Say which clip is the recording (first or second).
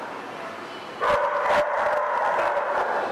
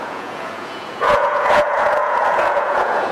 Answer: first